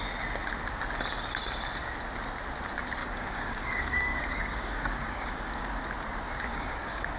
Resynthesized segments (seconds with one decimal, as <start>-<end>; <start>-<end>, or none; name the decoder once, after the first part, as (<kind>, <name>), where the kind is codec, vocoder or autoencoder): 3.0-5.8 (codec, DAC); 6.5-7.2